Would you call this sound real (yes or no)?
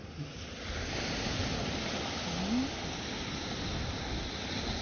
yes